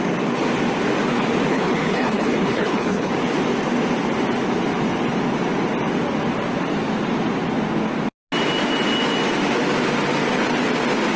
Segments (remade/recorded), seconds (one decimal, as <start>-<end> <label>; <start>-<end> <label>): 0.0-1.5 recorded; 1.5-3.1 remade; 3.1-11.2 recorded